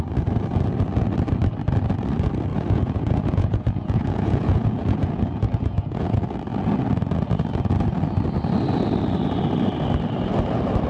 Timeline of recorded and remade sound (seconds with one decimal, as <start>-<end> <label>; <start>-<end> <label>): 0.0-2.5 recorded; 2.5-6.2 remade; 6.2-10.9 recorded